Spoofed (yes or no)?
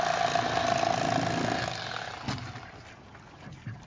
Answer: no